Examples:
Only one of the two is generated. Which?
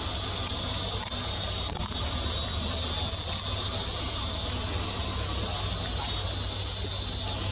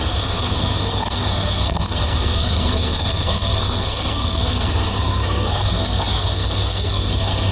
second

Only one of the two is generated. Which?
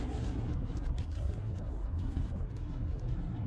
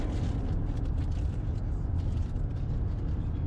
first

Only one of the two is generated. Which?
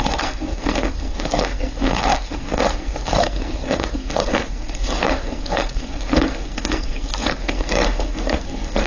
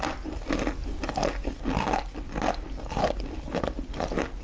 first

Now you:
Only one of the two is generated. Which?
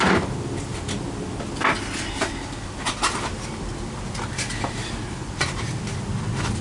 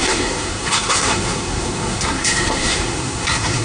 second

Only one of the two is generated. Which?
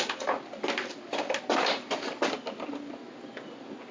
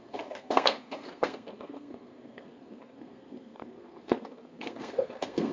second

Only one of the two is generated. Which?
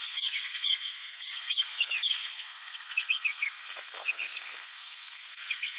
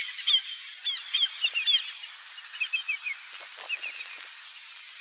first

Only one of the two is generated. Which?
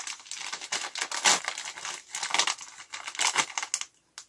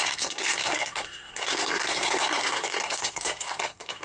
second